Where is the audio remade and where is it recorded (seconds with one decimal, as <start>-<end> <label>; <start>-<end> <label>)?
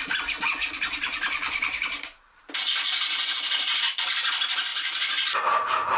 0.0-6.0 remade